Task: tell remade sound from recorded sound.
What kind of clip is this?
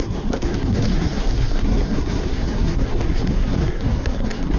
remade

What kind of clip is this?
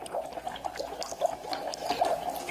recorded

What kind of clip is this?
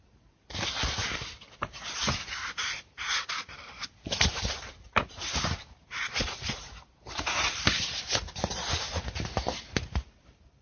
remade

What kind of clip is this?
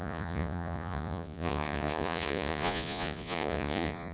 remade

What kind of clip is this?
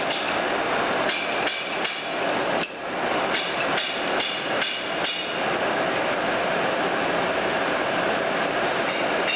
recorded